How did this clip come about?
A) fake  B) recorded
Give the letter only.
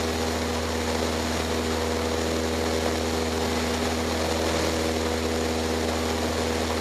B